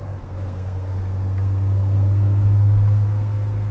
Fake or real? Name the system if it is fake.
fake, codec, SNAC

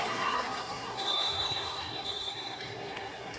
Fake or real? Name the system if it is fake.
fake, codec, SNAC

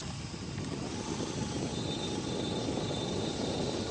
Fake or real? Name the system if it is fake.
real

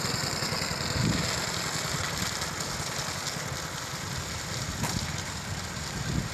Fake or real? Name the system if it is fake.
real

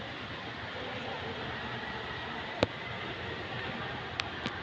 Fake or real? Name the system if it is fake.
real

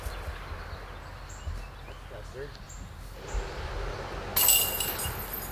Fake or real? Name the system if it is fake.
real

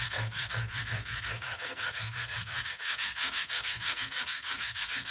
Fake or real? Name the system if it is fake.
fake, codec, SNAC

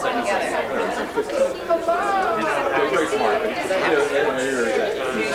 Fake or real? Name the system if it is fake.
real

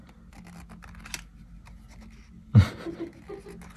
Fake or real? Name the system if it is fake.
real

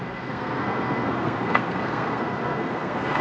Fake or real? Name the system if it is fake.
fake, codec, SNAC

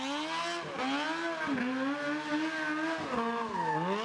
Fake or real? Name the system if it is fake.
real